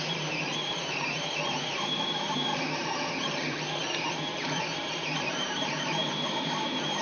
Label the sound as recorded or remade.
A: remade